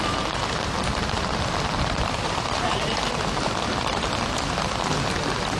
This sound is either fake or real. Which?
fake